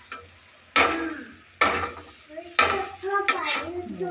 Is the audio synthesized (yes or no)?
no